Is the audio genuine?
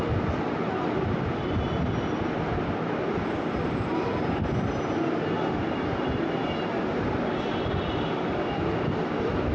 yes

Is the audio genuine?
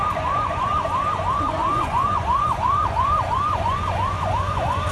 no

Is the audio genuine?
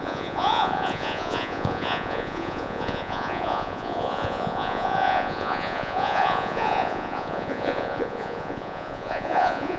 no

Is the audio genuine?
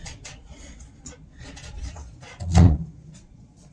no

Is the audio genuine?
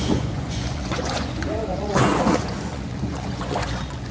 no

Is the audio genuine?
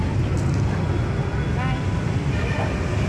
yes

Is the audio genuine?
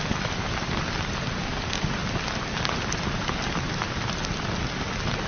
yes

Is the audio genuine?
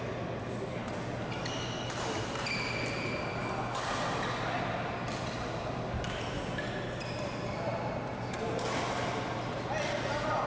yes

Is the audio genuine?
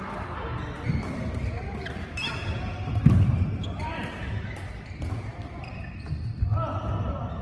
yes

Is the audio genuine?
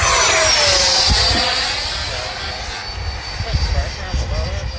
yes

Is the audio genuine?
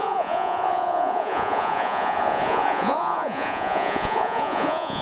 no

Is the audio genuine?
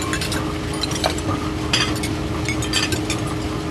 yes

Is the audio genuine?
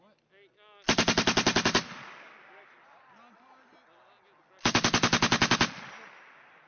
yes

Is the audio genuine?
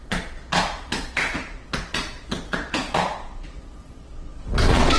no